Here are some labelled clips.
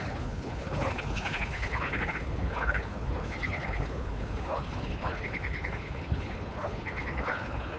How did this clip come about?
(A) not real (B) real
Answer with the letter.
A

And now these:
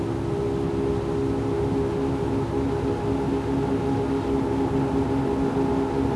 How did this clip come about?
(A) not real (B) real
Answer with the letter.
B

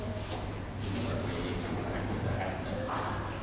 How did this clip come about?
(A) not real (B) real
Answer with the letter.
B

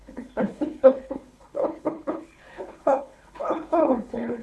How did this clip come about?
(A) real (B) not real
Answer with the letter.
B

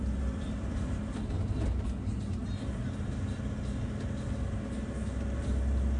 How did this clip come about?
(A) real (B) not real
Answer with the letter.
A